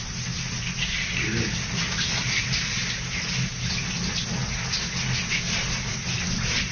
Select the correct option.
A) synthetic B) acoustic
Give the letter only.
B